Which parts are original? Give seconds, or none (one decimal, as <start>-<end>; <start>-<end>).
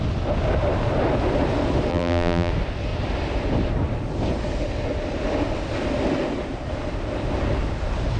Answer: 0.0-1.9; 2.5-8.2